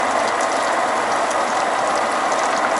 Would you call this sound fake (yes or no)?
yes